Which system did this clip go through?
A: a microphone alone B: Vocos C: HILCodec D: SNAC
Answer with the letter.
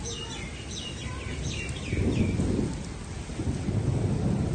A